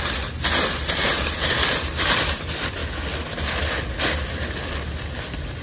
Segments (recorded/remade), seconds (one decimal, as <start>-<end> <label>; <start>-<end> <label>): 0.0-5.6 recorded